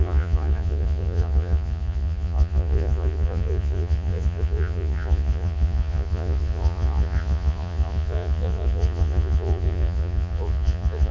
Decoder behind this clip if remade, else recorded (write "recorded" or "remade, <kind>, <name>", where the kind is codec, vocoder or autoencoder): remade, vocoder, Vocos